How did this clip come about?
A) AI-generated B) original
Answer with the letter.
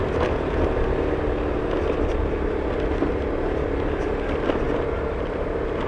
B